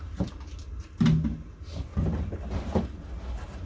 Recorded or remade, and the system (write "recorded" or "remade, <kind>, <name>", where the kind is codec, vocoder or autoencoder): recorded